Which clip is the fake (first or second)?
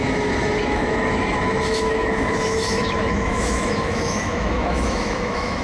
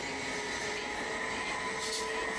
first